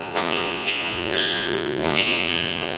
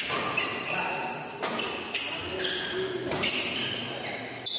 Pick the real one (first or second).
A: second